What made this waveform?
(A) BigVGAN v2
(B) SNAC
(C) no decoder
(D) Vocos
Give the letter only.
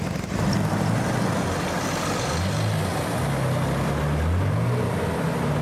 C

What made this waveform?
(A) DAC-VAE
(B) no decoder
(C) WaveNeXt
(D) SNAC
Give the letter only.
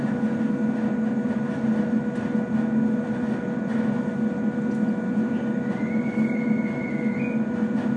B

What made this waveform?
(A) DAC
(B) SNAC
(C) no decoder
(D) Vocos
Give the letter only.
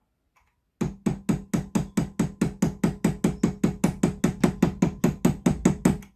C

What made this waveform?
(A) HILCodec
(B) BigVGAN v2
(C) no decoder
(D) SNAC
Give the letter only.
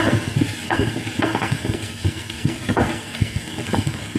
D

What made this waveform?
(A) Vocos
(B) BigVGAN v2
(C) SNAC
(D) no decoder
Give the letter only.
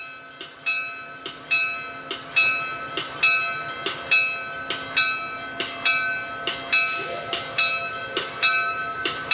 D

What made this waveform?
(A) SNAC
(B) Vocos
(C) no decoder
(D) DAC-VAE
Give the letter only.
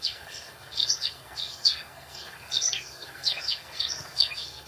A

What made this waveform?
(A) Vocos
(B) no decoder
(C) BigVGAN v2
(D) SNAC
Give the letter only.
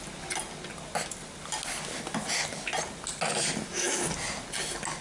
B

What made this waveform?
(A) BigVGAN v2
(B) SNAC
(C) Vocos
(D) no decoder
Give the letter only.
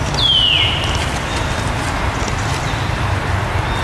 D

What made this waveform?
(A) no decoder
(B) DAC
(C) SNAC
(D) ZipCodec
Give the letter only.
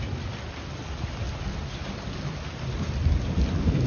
A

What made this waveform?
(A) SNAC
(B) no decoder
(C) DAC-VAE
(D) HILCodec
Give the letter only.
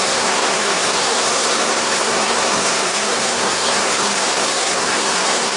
A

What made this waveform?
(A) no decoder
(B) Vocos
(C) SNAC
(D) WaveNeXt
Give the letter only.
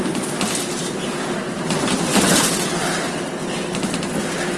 A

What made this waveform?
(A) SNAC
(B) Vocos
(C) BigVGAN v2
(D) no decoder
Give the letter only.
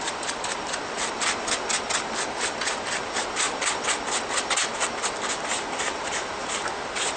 D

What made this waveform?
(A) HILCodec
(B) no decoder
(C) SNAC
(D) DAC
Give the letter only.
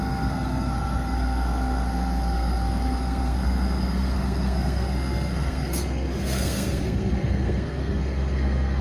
C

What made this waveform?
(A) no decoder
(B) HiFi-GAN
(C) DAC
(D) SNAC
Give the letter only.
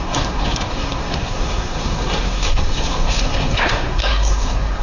D